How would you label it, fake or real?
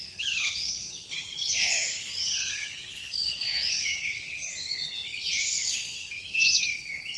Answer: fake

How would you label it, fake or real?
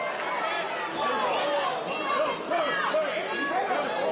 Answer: real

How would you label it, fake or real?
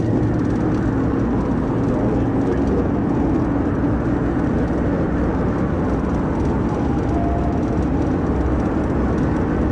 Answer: real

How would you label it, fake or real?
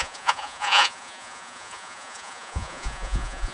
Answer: fake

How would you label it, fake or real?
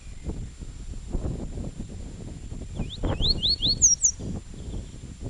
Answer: real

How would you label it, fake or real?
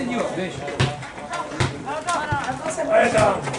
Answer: real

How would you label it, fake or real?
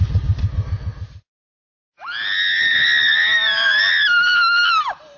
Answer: real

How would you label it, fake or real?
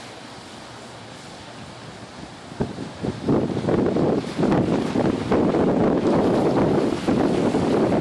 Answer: real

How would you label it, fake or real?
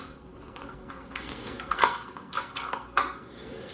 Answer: fake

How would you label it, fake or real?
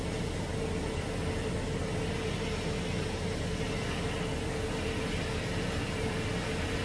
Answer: real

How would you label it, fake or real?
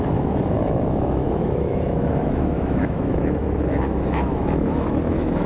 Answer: fake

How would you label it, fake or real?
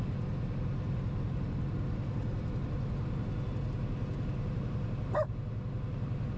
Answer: real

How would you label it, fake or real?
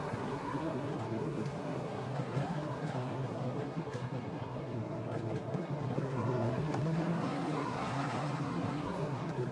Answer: fake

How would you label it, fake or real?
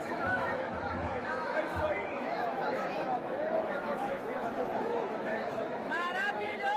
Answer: fake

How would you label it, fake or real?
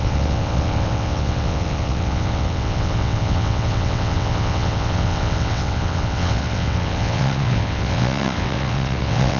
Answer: fake